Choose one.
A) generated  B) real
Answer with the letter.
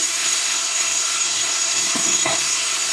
A